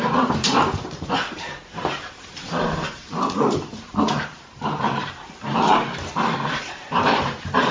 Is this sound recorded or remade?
remade